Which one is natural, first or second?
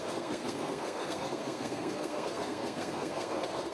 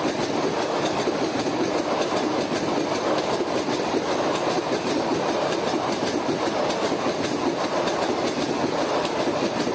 second